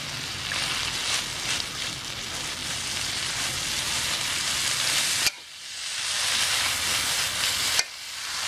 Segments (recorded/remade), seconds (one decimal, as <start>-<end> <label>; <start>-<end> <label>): 0.0-8.5 recorded